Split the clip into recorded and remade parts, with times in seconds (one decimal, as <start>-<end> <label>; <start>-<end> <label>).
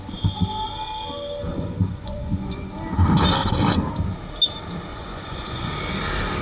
0.0-1.5 recorded; 1.5-2.7 remade; 2.7-4.9 recorded; 4.9-5.7 remade; 5.7-6.4 recorded